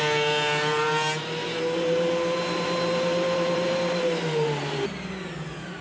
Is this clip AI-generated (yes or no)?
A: yes